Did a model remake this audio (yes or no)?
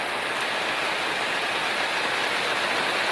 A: no